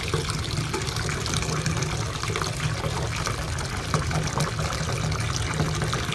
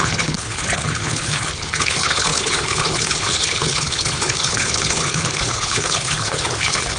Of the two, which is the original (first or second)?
first